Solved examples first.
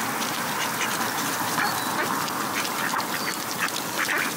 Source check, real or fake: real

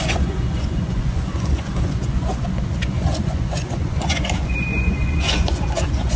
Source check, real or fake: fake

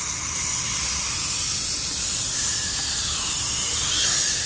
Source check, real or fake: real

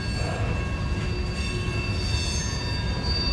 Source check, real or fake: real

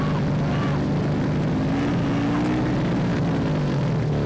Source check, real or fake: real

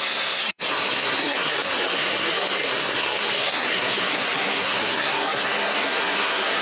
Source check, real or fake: fake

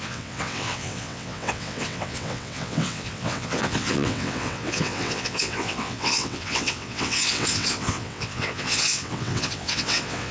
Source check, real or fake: fake